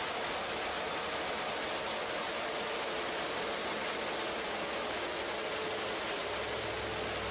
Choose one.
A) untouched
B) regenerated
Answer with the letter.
A